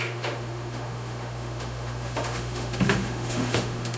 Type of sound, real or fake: fake